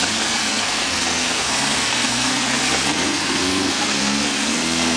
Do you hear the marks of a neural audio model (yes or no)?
yes